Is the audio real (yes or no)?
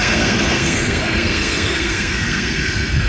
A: no